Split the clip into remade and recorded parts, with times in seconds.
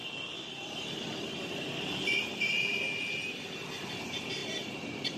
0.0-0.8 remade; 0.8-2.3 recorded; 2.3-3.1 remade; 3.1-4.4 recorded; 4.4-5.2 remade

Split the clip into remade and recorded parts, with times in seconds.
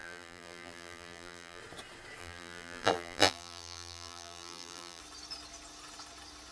0.0-1.6 remade; 1.6-2.2 recorded; 2.2-5.0 remade; 5.0-6.5 recorded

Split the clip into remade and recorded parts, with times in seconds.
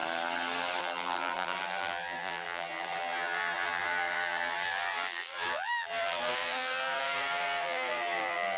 0.0-0.8 recorded; 0.8-8.6 remade